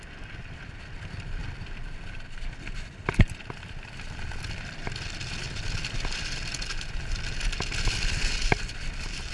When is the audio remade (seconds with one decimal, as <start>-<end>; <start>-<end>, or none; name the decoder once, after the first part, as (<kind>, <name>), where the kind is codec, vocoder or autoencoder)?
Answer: 1.4-2.0 (vocoder, BigVGAN v2)